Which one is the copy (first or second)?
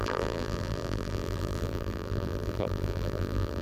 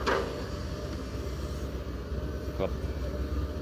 first